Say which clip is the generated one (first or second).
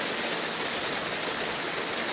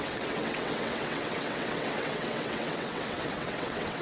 second